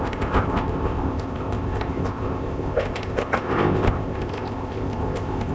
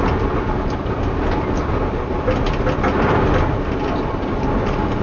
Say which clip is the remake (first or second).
first